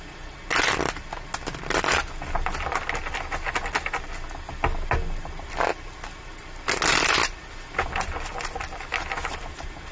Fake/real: real